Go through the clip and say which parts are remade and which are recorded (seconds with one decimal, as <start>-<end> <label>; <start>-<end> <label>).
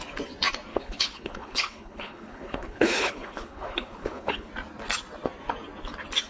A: 0.0-0.7 recorded; 0.7-4.5 remade; 4.5-6.3 recorded